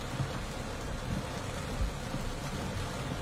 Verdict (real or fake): real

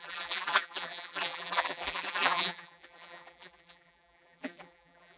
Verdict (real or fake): fake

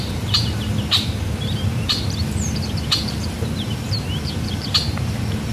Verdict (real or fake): fake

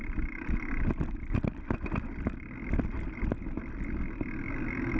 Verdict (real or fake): real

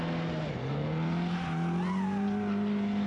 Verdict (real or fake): real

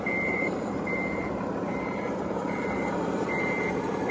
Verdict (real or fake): fake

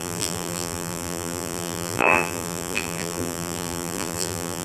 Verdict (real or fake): fake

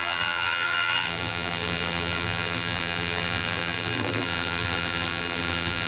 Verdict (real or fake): fake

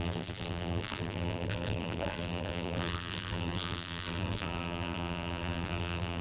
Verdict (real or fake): fake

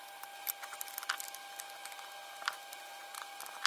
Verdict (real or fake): real